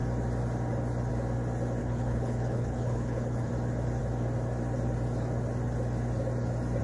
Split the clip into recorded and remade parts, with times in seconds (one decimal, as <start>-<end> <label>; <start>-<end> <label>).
0.0-1.8 recorded; 1.8-3.5 remade; 3.5-6.8 recorded